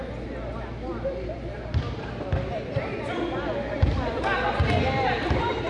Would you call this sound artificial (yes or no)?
no